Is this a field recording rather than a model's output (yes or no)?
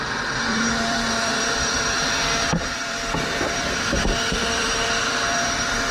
no